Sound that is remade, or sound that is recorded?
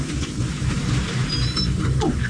remade